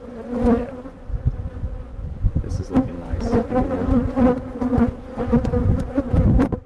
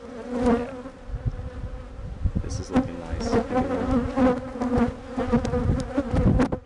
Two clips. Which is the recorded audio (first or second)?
second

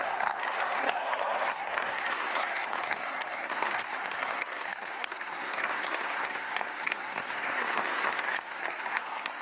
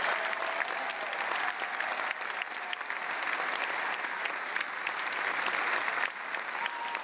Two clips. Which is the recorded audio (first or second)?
second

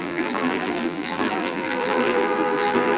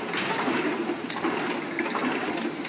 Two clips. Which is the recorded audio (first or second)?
second